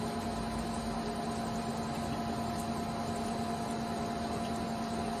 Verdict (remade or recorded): recorded